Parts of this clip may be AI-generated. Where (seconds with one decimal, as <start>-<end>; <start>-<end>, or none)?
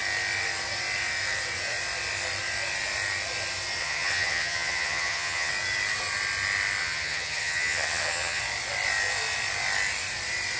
3.8-5.5; 6.8-8.4